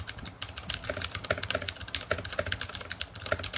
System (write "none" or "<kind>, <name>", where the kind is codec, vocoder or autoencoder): none